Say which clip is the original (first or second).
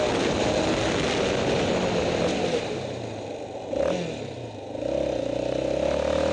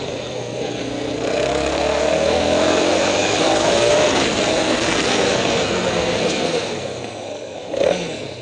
first